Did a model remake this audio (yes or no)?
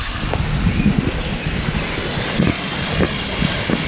no